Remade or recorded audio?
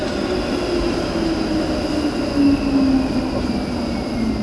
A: recorded